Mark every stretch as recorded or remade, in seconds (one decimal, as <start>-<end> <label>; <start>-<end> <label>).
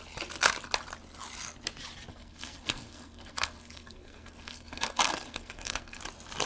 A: 0.0-2.1 recorded; 2.1-6.0 remade; 6.0-6.5 recorded